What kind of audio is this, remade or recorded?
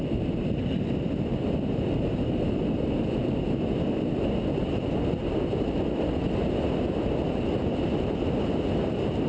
recorded